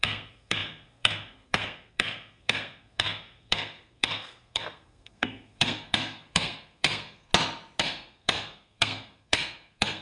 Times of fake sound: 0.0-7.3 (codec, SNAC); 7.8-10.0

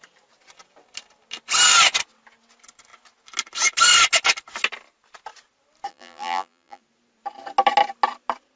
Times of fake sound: 5.9-6.8 (vocoder, BigVGAN v2)

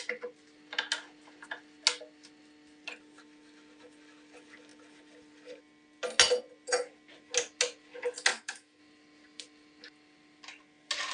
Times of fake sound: 8.3-8.8 (autoencoder, DAC-VAE)

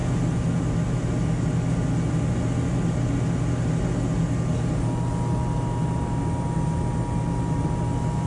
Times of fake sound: none

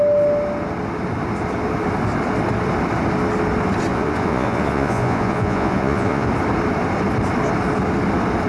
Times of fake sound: 3.9-6.3 (vocoder, Vocos)

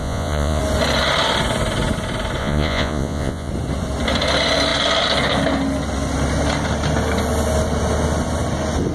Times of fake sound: 0.0-0.6 (vocoder, Vocos); 2.4-3.5

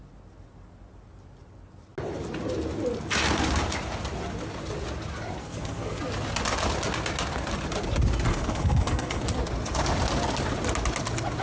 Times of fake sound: 5.4-6.0 (codec, SNAC); 8.3-9.2

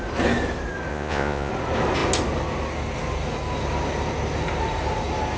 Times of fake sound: 0.9-1.5 (vocoder, Vocos)